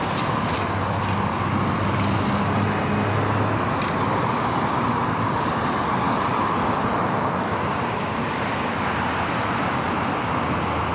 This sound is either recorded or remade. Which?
recorded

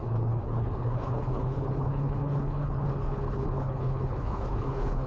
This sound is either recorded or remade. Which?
remade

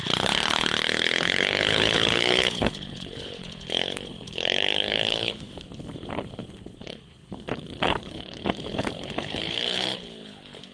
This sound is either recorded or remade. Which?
remade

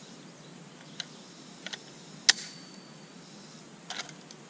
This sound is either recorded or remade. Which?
recorded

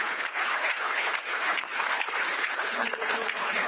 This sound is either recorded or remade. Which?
remade